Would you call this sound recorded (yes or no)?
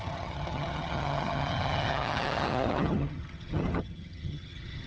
no